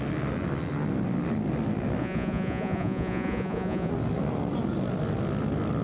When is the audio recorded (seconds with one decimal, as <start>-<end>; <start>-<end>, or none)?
0.0-2.0; 3.9-5.8